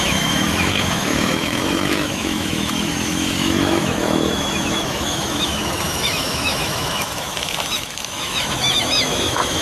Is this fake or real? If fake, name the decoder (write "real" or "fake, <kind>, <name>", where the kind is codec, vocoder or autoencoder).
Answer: fake, autoencoder, DAC-VAE